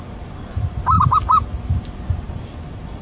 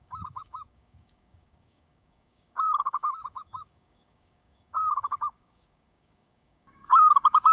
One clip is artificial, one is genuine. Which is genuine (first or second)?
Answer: first